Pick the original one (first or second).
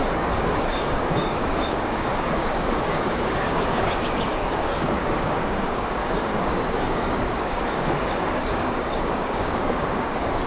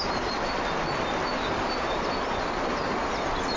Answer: second